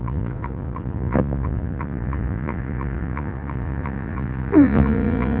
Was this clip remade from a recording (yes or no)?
yes